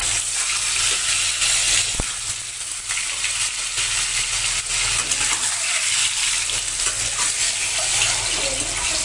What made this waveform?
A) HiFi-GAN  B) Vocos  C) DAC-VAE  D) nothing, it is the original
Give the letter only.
D